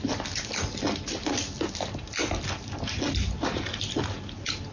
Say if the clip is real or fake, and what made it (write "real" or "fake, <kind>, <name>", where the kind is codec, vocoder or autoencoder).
real